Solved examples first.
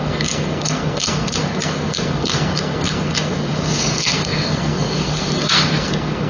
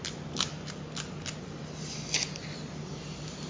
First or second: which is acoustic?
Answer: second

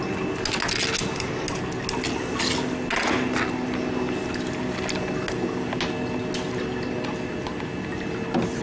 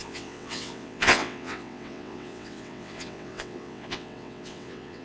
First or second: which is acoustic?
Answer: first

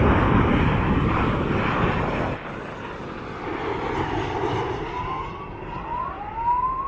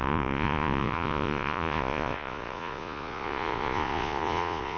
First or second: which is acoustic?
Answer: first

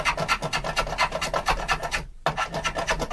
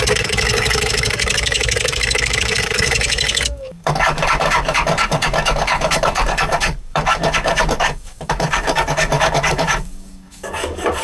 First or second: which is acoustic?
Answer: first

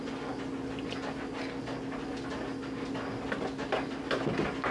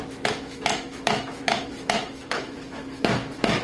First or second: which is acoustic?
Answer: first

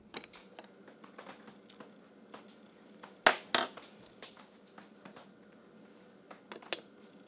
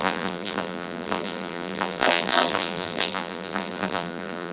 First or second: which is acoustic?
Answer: first